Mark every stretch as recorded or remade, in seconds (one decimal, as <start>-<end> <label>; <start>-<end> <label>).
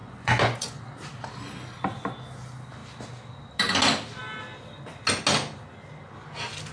0.0-0.8 remade; 0.8-6.7 recorded